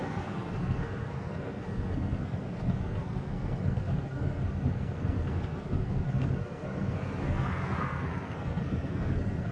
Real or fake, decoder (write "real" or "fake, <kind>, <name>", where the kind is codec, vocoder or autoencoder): fake, codec, SNAC